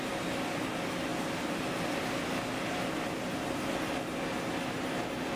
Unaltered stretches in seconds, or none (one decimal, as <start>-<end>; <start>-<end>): 0.0-5.4